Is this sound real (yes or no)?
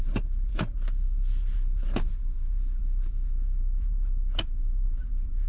no